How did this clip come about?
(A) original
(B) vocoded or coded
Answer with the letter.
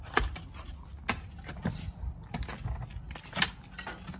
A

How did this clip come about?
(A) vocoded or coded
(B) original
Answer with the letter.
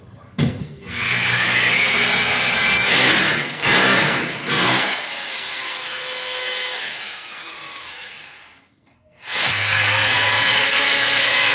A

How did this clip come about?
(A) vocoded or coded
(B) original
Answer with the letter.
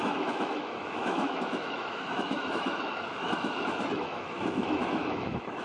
A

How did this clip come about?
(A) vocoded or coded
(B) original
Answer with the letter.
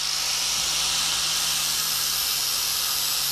B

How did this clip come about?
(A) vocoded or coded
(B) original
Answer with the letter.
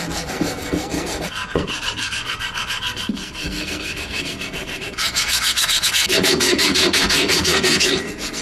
A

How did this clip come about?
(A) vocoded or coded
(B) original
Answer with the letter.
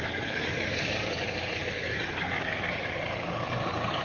A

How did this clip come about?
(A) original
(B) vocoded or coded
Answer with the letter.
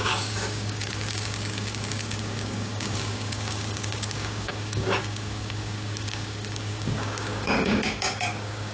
B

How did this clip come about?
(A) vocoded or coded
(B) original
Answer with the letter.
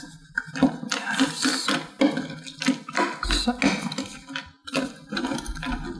B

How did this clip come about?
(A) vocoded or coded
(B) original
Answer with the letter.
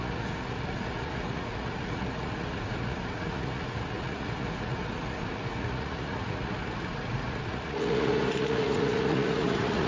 A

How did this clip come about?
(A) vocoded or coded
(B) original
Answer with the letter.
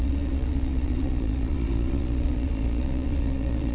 A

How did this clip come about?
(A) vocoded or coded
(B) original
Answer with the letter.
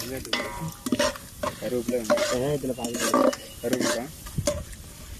B